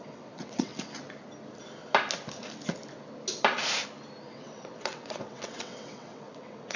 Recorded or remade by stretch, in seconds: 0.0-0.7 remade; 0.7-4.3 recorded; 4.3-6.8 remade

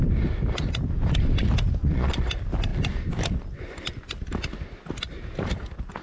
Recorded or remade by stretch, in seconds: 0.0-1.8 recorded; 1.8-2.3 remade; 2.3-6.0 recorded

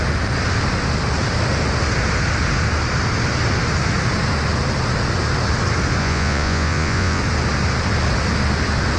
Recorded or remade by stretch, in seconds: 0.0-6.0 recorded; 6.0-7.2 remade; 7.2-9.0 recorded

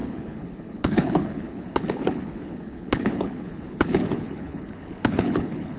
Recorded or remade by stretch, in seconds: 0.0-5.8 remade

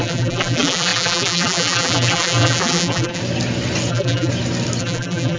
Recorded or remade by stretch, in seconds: 0.0-3.2 remade; 3.2-3.9 recorded; 3.9-4.3 remade; 4.3-4.8 recorded; 4.8-5.4 remade

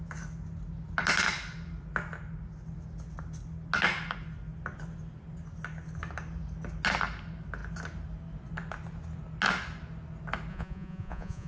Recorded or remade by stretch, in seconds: 0.0-10.5 recorded; 10.5-11.5 remade

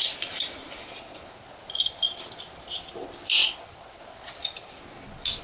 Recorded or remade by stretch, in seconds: 0.0-5.4 recorded